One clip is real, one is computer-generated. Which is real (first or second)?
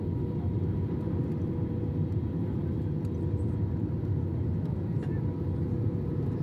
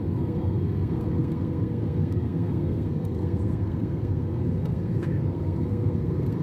first